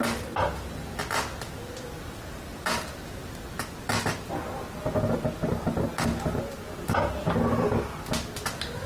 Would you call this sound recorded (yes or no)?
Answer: yes